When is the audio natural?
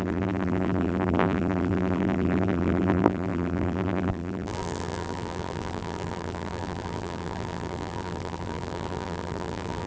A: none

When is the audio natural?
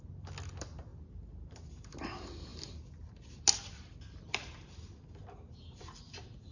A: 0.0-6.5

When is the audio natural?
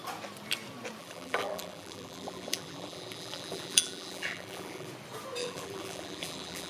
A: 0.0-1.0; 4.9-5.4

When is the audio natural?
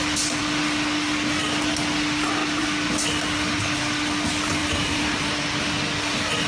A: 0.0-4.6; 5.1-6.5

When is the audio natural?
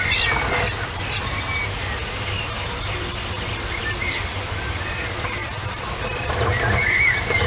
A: 0.0-7.5